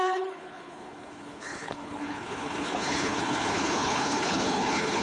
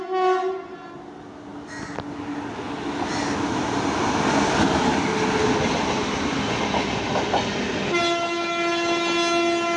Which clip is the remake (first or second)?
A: first